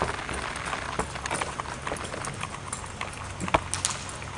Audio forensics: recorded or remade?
recorded